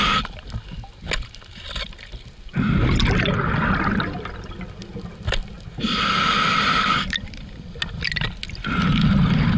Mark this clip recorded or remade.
recorded